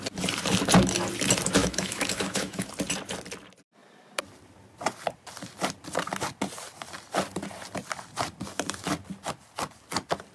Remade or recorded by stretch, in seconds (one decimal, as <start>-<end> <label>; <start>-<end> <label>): 0.0-1.6 recorded; 1.6-2.7 remade; 2.7-10.3 recorded